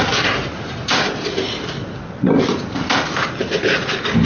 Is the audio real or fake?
real